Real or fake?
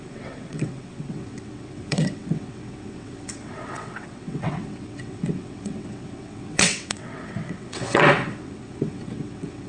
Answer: fake